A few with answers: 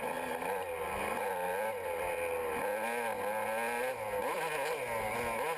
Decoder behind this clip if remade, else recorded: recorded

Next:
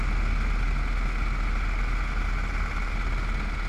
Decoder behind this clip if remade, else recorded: recorded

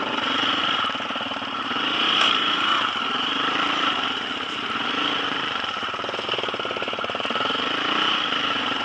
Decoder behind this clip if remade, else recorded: remade, vocoder, BigVGAN v2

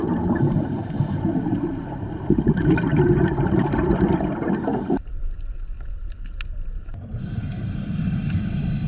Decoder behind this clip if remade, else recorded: remade, vocoder, BigVGAN v2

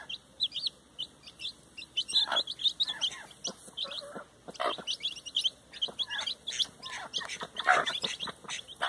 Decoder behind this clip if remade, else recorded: recorded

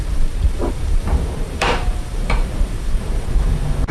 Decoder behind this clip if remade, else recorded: remade, vocoder, BigVGAN v2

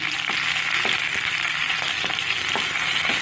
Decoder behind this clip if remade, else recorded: recorded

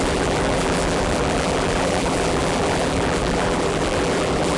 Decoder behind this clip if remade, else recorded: remade, vocoder, BigVGAN v2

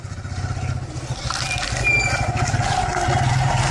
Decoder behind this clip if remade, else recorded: recorded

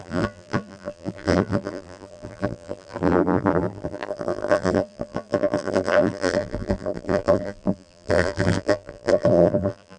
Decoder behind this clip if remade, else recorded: remade, vocoder, BigVGAN v2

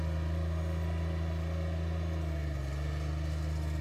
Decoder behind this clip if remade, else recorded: recorded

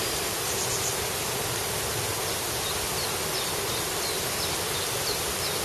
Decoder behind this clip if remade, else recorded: recorded